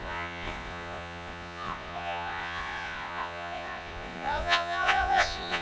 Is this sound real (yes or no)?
no